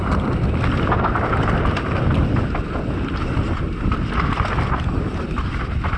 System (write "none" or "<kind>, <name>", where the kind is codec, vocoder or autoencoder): none